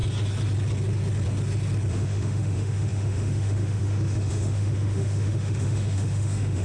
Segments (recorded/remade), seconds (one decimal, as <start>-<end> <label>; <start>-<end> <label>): 0.0-1.9 recorded; 1.9-6.6 remade